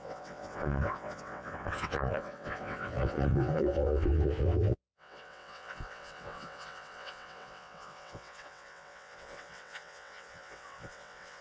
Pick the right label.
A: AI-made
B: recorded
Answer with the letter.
A